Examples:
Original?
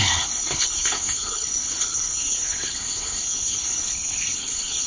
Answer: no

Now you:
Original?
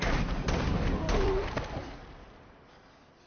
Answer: yes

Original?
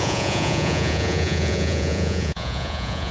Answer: no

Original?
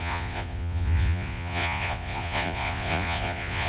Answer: no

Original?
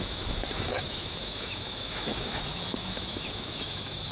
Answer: no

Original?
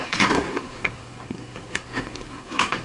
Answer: no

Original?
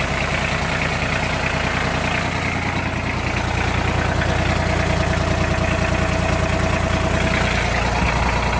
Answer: yes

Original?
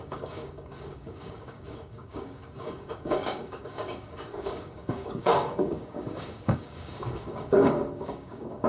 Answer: no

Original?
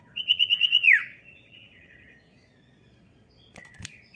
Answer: no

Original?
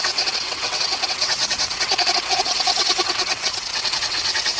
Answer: no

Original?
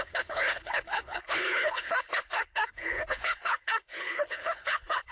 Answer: no